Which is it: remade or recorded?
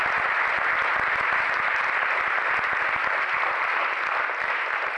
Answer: recorded